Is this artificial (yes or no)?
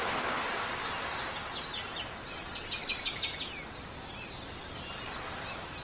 no